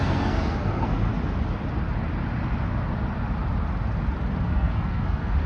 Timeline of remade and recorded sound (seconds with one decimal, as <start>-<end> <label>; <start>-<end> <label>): 0.0-1.1 remade; 1.1-4.4 recorded; 4.4-5.5 remade